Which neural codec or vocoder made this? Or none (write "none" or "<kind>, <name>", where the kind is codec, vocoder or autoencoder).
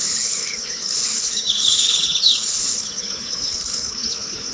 codec, HILCodec